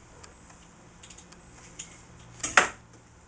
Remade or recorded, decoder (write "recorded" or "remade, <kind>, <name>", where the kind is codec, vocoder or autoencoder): recorded